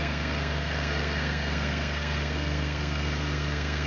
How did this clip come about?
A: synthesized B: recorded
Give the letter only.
A